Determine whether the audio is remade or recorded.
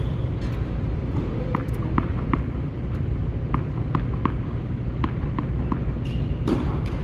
recorded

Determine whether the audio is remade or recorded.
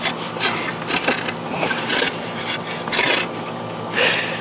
recorded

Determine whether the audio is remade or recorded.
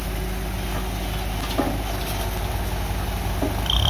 recorded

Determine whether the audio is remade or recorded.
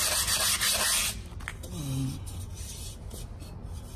recorded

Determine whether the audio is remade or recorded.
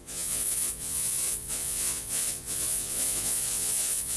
remade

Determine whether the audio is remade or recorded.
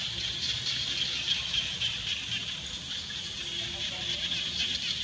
recorded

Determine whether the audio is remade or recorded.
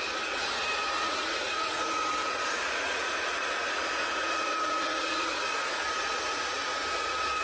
remade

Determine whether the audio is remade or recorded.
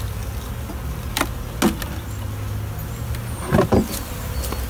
recorded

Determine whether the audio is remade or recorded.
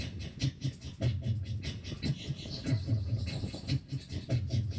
recorded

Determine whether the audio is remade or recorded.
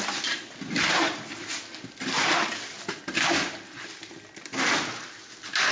recorded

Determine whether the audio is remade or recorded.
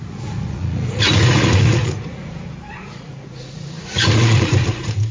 remade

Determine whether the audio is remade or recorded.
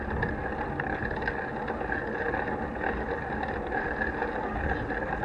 recorded